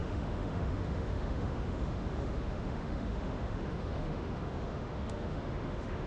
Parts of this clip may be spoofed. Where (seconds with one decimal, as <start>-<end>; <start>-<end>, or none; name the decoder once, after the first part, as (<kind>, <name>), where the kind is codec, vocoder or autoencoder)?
0.0-6.1 (autoencoder, DAC-VAE)